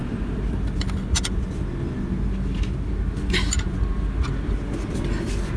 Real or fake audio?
real